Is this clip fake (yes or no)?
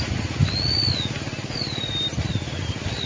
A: no